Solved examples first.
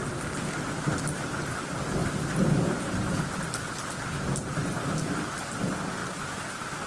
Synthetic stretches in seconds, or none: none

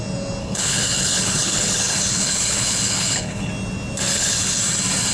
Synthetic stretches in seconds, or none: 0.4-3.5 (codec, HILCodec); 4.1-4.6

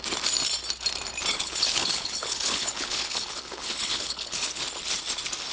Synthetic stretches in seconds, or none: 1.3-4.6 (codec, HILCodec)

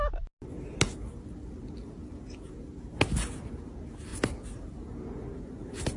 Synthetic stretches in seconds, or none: none